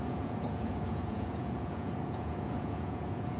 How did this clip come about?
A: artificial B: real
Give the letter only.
A